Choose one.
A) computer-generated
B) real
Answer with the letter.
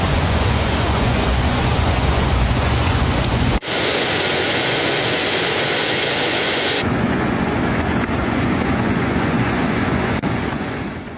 A